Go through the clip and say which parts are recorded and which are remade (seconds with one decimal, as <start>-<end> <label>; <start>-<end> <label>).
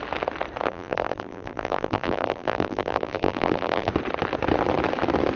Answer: 0.0-0.7 recorded; 0.7-3.9 remade; 3.9-5.4 recorded